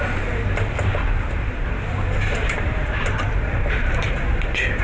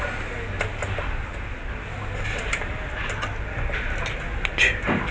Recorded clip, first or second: second